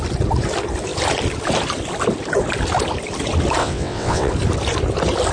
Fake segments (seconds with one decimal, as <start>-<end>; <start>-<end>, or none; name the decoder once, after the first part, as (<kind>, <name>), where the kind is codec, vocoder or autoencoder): 3.6-4.3 (vocoder, WaveNeXt)